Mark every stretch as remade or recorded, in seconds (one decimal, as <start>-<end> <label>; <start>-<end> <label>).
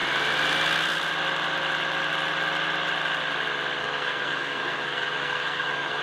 0.0-3.8 recorded; 3.8-6.0 remade